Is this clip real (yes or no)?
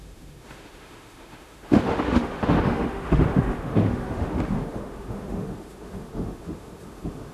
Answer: no